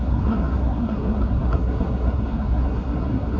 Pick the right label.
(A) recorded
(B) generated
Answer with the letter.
B